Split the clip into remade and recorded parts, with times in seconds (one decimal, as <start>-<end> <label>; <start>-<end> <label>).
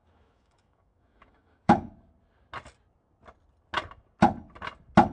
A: 0.0-1.9 remade; 1.9-5.1 recorded